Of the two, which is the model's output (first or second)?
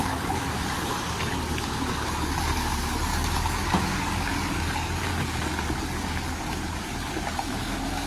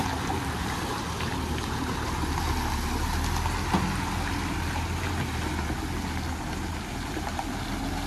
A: first